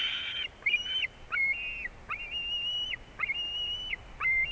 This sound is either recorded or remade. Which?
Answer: recorded